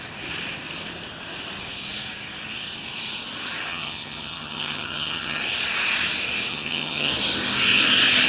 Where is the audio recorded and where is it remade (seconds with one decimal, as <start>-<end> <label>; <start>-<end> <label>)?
0.0-3.7 recorded; 3.7-5.4 remade; 5.4-6.5 recorded; 6.5-7.1 remade; 7.1-8.3 recorded